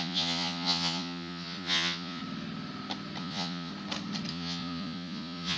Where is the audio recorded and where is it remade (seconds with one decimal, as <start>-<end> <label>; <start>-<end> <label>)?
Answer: 0.0-2.2 remade; 2.2-3.2 recorded; 3.2-3.7 remade; 3.7-4.3 recorded; 4.3-5.6 remade